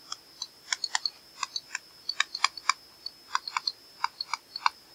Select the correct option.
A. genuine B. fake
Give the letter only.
A